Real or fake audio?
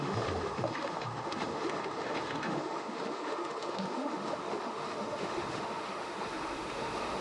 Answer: fake